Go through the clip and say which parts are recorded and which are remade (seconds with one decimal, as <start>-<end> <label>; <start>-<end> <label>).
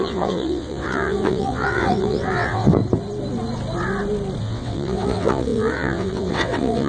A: 0.0-2.8 remade; 2.8-4.4 recorded; 4.4-6.9 remade